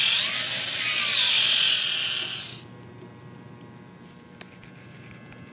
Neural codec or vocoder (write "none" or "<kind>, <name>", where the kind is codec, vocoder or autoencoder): none